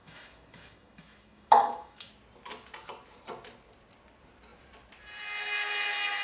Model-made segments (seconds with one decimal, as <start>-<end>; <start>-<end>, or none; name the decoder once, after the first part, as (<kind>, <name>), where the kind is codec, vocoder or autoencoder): 0.0-2.1 (autoencoder, DAC-VAE)